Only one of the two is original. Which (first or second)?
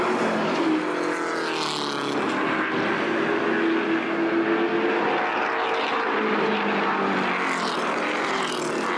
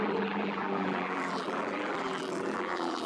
first